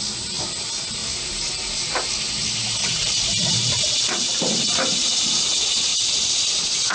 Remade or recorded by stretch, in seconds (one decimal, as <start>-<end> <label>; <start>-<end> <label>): 0.0-1.0 recorded; 1.0-2.1 remade; 2.1-2.8 recorded; 2.8-5.4 remade; 5.4-6.9 recorded